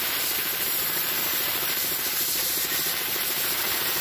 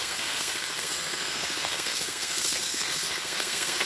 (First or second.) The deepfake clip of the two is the second